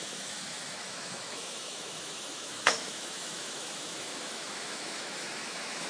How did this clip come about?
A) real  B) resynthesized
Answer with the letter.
B